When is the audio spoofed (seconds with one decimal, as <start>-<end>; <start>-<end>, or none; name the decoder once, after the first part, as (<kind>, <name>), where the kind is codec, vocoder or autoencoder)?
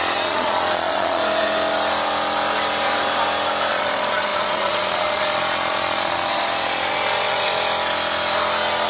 0.0-1.2 (vocoder, Vocos); 3.7-7.5